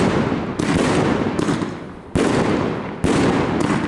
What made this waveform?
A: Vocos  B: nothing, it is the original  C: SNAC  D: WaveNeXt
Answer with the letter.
B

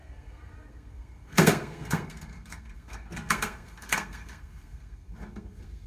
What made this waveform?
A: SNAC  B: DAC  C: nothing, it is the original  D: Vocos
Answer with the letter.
A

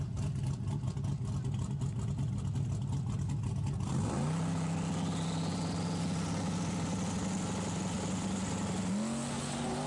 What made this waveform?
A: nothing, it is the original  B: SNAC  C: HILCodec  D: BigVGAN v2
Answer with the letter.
A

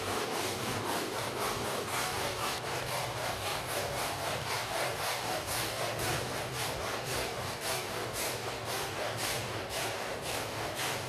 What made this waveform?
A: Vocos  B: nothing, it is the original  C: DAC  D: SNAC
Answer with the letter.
C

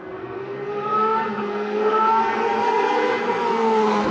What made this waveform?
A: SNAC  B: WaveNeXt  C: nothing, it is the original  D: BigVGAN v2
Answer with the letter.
A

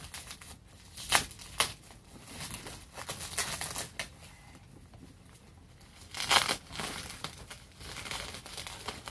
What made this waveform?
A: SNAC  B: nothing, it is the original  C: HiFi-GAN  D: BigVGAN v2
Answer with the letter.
B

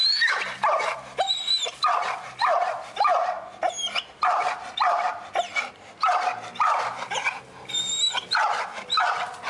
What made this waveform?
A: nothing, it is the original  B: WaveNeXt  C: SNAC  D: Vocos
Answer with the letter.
A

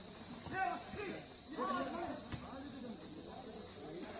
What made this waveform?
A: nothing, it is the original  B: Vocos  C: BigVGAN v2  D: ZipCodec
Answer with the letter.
A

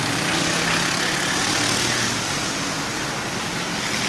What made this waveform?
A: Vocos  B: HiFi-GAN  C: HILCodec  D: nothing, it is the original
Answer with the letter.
D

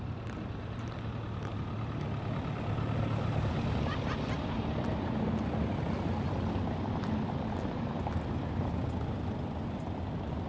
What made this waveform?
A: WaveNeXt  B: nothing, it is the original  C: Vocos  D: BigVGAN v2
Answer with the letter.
B